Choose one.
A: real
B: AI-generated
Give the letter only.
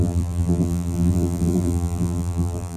B